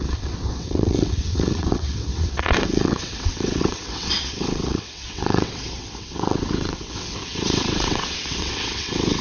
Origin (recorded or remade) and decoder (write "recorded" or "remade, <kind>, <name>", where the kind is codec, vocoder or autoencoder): remade, vocoder, WaveNeXt